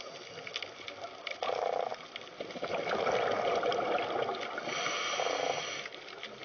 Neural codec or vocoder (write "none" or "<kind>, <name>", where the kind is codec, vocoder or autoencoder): none